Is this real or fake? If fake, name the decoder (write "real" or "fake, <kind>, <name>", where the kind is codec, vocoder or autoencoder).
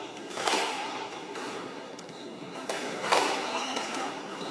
fake, codec, SNAC